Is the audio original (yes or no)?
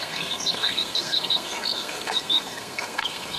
no